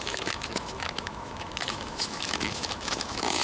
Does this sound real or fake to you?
fake